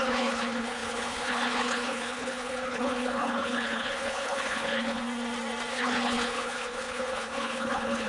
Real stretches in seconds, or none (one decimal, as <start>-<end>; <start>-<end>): 5.0-5.7